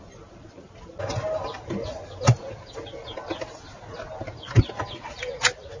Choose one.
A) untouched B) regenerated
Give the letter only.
A